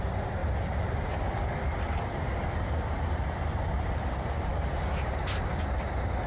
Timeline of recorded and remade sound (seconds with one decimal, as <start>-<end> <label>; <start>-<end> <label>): 0.0-6.3 recorded